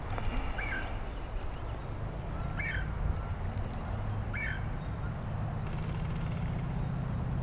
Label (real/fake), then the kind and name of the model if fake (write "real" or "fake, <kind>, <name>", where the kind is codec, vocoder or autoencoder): real